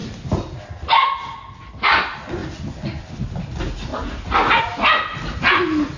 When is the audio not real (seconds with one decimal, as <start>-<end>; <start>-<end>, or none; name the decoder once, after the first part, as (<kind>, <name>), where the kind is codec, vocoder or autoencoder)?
none